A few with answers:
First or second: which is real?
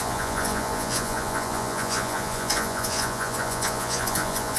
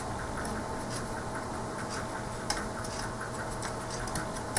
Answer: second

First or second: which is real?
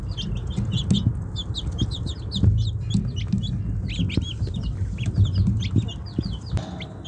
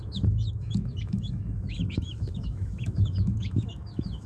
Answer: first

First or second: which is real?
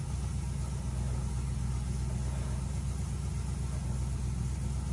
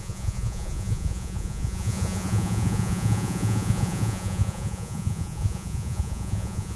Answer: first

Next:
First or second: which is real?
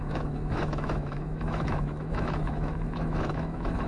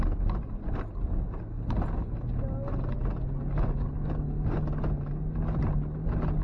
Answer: second